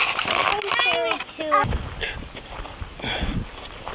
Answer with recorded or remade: recorded